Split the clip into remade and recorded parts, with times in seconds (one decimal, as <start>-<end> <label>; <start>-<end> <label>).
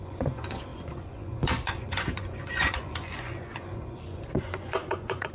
0.0-5.3 remade